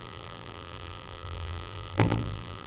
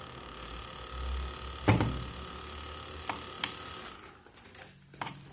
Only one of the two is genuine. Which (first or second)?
second